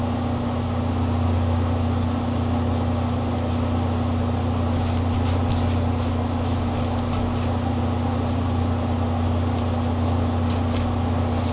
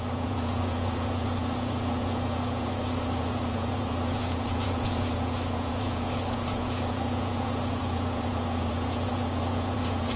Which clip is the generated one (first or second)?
second